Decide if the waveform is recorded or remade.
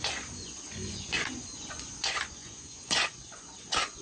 remade